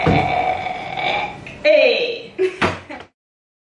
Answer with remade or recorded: recorded